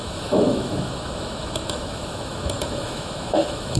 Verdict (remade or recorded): remade